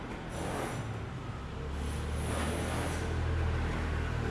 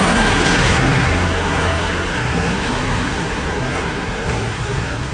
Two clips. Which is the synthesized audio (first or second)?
second